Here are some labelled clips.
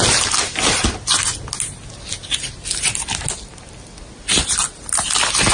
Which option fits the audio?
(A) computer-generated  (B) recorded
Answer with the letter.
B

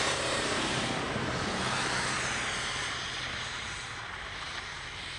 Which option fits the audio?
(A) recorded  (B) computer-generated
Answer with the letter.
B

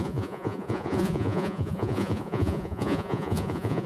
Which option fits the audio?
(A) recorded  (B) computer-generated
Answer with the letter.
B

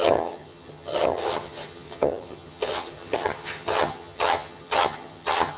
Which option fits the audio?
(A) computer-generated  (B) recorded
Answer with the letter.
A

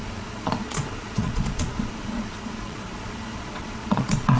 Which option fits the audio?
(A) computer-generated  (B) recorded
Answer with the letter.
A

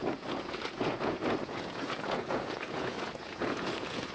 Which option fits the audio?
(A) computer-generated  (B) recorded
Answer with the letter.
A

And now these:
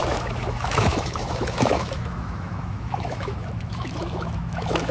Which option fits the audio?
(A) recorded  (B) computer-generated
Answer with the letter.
B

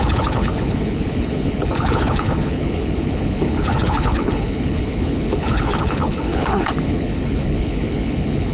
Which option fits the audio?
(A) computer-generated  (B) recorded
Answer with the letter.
A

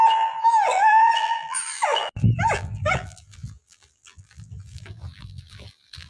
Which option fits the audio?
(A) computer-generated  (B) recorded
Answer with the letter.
A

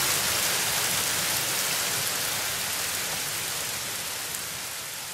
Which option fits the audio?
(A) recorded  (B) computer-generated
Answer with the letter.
A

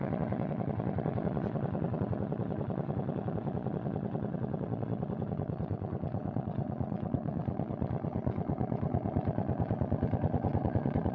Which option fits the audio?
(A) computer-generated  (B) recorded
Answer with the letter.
A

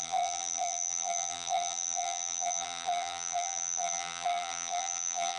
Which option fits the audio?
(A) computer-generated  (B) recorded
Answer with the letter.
A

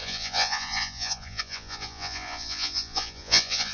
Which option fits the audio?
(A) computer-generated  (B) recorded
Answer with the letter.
A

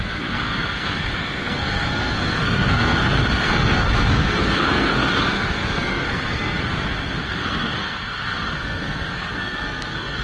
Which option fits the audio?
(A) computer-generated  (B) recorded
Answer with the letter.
A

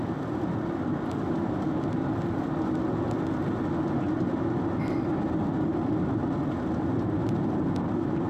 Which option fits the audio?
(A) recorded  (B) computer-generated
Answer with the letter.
A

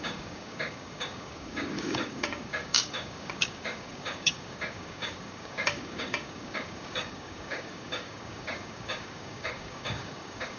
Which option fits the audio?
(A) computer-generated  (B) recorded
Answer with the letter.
A